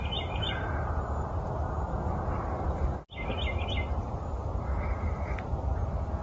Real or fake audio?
real